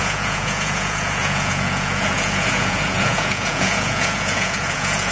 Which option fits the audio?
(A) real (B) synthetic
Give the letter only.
B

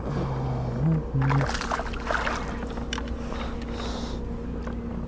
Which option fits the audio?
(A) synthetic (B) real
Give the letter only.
B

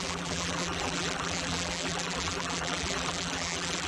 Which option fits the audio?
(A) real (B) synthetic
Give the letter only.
B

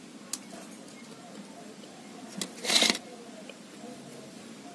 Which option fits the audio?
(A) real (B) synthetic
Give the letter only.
A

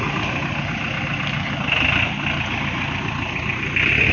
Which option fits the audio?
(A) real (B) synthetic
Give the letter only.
A